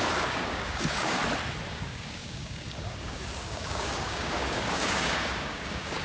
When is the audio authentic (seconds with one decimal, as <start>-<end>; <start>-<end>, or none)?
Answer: 1.2-1.7